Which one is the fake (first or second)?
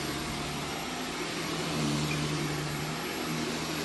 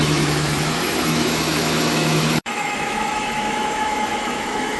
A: second